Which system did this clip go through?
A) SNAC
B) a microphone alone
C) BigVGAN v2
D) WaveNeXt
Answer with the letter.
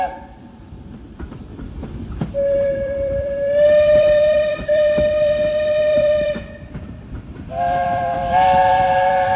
C